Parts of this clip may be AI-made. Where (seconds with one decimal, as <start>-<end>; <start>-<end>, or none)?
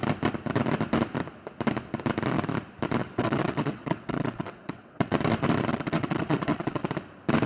3.0-5.2; 5.7-6.9